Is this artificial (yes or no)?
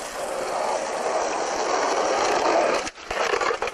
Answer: no